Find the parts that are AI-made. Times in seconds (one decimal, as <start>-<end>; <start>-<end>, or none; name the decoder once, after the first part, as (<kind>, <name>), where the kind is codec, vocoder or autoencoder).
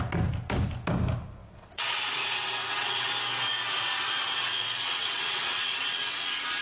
1.4-3.1 (vocoder, WaveNeXt); 3.5-6.6